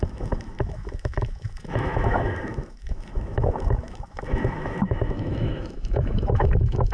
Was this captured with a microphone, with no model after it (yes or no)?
no